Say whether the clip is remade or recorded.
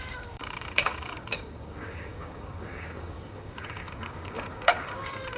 remade